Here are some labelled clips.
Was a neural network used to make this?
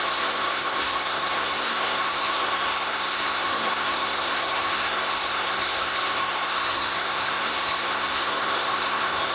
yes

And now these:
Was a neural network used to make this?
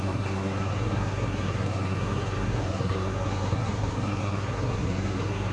yes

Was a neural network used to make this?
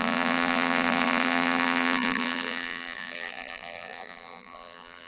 yes